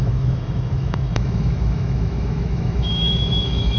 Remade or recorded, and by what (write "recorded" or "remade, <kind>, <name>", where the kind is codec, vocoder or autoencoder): remade, autoencoder, DAC-VAE